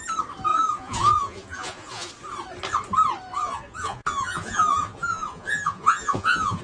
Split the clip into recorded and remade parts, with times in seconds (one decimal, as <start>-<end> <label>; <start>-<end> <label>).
0.0-0.5 recorded; 0.5-2.1 remade; 2.1-3.3 recorded; 3.3-6.6 remade

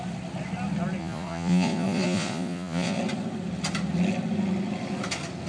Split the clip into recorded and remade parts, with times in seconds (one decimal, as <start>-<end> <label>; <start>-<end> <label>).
0.0-1.0 recorded; 1.0-3.0 remade; 3.0-5.5 recorded

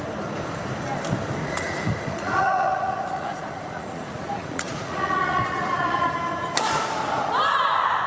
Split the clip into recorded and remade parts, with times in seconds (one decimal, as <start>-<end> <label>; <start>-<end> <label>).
0.0-1.4 recorded; 1.4-6.1 remade; 6.1-8.1 recorded

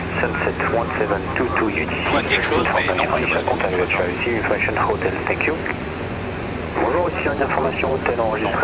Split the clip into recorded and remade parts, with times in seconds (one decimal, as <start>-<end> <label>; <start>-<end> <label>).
0.0-1.5 recorded; 1.5-3.6 remade; 3.6-5.7 recorded; 5.7-8.1 remade; 8.1-8.6 recorded

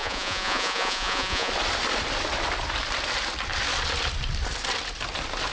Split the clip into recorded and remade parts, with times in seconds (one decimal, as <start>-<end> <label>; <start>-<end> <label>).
0.0-1.5 remade; 1.5-5.5 recorded

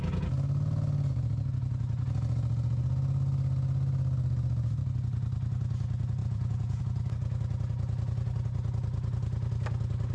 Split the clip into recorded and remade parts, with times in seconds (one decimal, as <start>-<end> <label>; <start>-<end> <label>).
0.0-6.2 recorded; 6.2-6.8 remade; 6.8-10.1 recorded

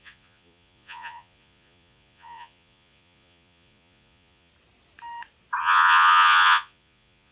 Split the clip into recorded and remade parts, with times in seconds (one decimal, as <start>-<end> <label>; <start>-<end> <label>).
0.0-4.5 remade; 4.5-5.6 recorded; 5.6-7.3 remade

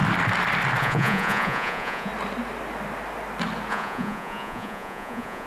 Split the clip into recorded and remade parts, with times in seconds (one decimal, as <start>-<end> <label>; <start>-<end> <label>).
0.0-0.8 recorded; 0.8-2.1 remade; 2.1-3.7 recorded; 3.7-5.5 remade